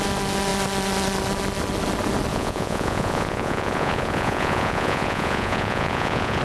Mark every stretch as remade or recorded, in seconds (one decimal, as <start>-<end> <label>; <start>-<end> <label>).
0.0-2.3 recorded; 2.3-6.4 remade